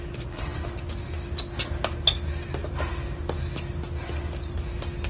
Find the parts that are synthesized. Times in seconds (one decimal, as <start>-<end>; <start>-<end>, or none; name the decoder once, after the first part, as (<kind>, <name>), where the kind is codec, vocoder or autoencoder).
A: none